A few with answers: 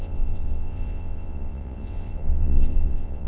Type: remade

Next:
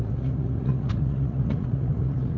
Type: remade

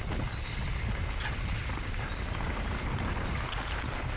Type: recorded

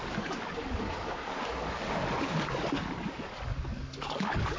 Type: remade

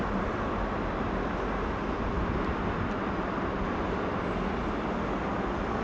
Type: recorded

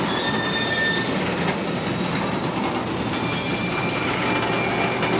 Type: recorded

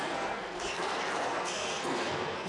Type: remade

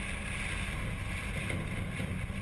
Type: recorded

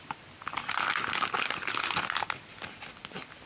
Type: recorded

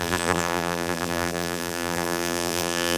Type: remade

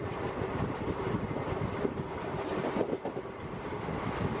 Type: recorded